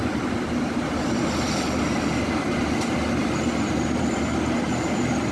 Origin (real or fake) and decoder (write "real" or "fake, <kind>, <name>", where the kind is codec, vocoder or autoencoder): real